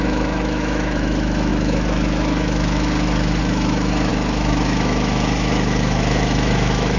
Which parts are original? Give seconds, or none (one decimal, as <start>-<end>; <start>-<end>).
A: none